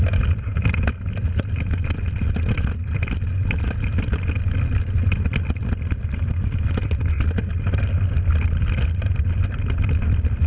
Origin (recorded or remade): recorded